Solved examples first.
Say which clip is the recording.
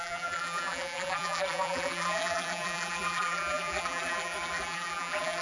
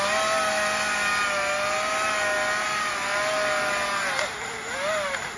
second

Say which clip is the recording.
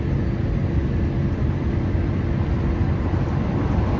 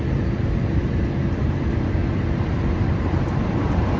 first